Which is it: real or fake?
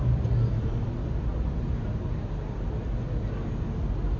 real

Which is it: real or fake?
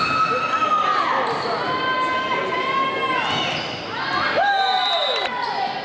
real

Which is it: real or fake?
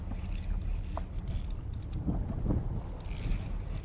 real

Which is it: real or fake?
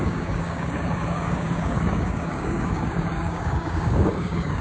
fake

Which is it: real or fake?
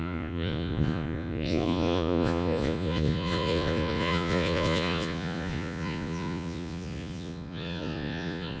fake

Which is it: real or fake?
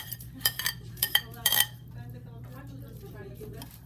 fake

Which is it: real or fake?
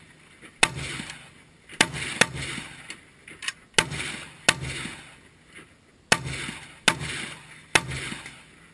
real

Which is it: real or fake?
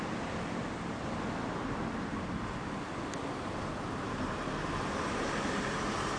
real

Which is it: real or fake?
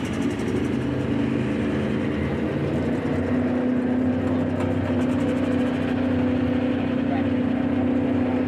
real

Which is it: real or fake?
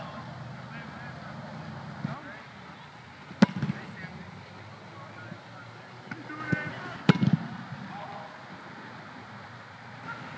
real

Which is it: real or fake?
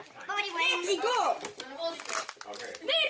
real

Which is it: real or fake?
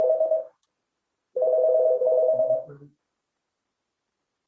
real